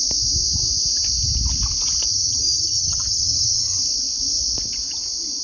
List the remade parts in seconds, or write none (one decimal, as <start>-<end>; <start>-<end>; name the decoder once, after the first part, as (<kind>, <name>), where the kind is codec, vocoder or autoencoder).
2.1-3.8 (vocoder, HiFi-GAN)